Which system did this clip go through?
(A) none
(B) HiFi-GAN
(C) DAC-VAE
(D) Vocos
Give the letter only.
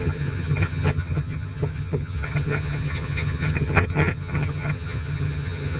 B